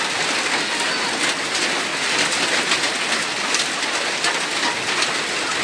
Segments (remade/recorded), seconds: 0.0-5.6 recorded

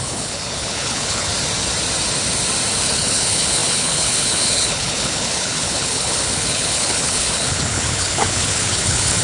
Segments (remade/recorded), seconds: 0.0-1.3 remade; 1.3-2.8 recorded; 2.8-9.2 remade